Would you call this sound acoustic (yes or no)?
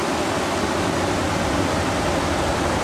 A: yes